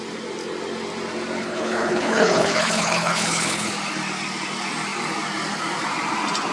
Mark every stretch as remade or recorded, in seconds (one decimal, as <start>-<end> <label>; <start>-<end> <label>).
0.0-1.4 recorded; 1.4-3.7 remade; 3.7-6.5 recorded